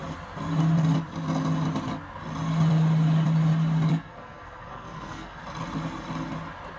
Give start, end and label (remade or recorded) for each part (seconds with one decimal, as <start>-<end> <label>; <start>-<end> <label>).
0.0-3.9 recorded; 3.9-5.4 remade; 5.4-6.8 recorded